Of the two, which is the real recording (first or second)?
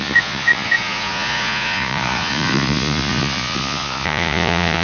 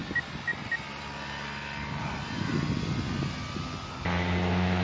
second